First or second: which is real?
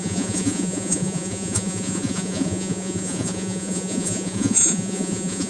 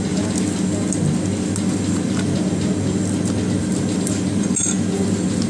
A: second